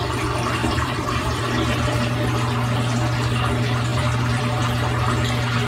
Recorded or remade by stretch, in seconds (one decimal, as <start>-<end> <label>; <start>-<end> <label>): 0.0-0.6 recorded; 0.6-1.4 remade; 1.4-3.9 recorded; 3.9-4.4 remade; 4.4-5.7 recorded